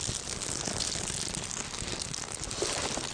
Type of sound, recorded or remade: recorded